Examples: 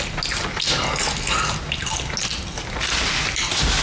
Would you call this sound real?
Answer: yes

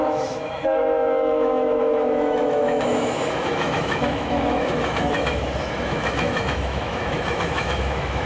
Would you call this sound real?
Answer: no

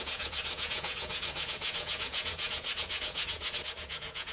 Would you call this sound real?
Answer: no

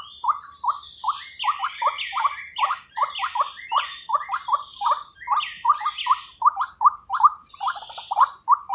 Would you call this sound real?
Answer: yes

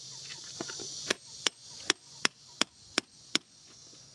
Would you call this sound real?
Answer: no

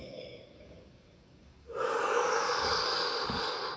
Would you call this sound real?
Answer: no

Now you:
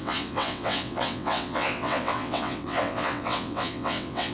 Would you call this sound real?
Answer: no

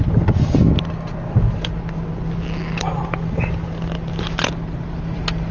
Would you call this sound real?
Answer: yes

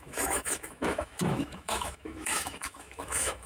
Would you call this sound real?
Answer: no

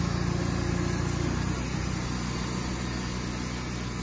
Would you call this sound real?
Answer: yes